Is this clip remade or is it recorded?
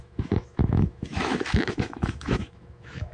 remade